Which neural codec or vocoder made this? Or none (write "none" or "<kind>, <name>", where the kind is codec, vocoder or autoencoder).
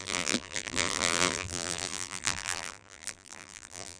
vocoder, BigVGAN v2